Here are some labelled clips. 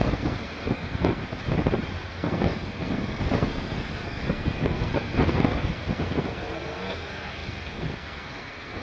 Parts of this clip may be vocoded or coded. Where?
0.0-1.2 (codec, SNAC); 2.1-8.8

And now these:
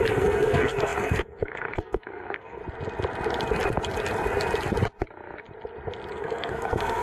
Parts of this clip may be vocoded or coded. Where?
0.0-2.6 (codec, SNAC); 6.1-7.0